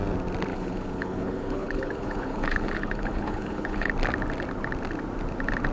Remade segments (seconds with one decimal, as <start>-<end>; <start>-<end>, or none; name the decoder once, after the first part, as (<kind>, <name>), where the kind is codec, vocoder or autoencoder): 0.5-3.9 (codec, HILCodec)